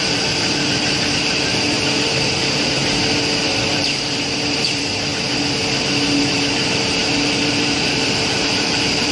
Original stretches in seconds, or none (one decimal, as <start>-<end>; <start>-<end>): 2.8-3.7; 5.1-6.3